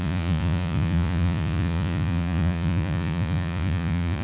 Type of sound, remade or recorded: remade